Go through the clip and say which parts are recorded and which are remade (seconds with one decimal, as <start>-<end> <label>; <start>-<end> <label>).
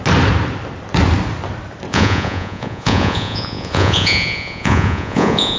0.0-1.9 recorded; 1.9-5.6 remade